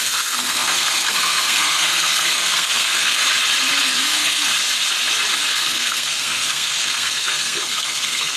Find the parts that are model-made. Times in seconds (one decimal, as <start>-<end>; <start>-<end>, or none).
0.0-3.2; 3.8-4.5; 5.4-8.4